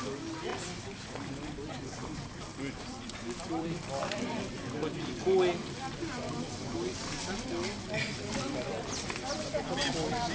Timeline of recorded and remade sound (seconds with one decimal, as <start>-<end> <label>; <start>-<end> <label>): 0.0-0.5 recorded; 0.5-1.3 remade; 1.3-2.0 recorded; 2.0-5.1 remade; 5.1-10.3 recorded